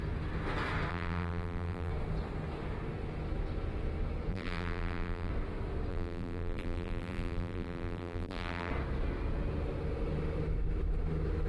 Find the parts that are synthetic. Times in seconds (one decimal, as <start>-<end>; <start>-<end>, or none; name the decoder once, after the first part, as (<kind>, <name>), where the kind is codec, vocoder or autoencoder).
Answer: 0.9-1.9 (vocoder, BigVGAN v2); 4.3-5.3; 5.9-8.7